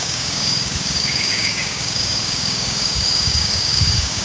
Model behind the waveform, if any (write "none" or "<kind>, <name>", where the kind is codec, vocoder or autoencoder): codec, DAC